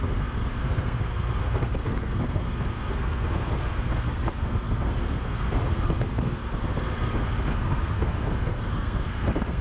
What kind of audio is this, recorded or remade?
remade